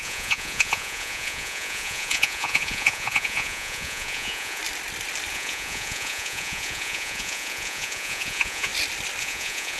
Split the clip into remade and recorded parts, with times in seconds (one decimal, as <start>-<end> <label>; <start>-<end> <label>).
0.0-4.6 remade; 4.6-5.3 recorded; 5.3-8.7 remade; 8.7-9.2 recorded; 9.2-9.8 remade